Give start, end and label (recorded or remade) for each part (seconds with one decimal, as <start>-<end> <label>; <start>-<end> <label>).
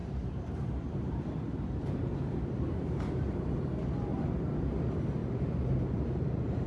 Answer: 0.0-3.4 remade; 3.4-4.1 recorded; 4.1-4.6 remade; 4.6-5.2 recorded; 5.2-6.7 remade